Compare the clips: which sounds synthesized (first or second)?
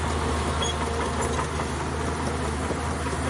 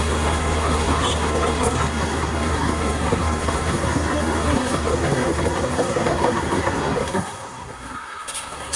second